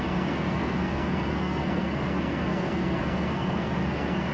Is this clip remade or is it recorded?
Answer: remade